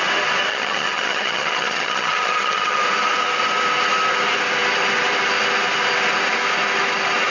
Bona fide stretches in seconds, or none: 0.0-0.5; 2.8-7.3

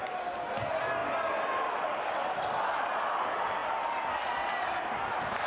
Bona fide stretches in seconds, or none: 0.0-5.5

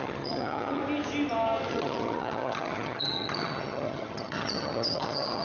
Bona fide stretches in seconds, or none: 0.8-1.7

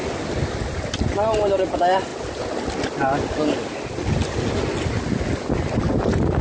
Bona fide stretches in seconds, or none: 0.0-6.4

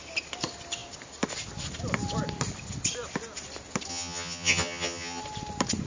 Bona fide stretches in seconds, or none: 0.0-3.9; 5.2-5.9

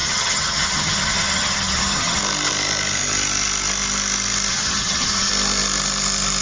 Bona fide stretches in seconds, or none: 2.2-4.5; 5.3-6.4

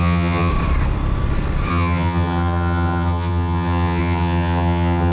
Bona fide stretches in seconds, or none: 0.5-1.7

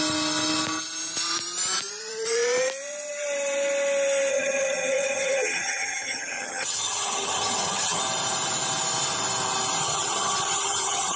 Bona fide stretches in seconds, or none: 0.0-4.3; 8.0-9.8